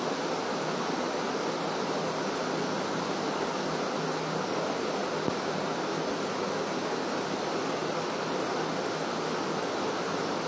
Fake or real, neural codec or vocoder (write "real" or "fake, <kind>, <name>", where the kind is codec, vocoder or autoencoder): real